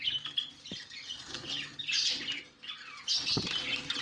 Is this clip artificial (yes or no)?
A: no